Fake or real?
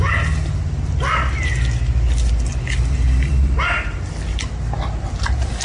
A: real